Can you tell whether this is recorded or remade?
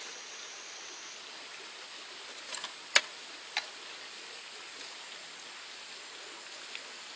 recorded